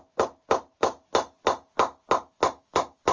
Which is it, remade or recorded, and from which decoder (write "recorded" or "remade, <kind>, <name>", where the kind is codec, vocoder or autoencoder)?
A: recorded